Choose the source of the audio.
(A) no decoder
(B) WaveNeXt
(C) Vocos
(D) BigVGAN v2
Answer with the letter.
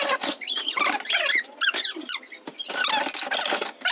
A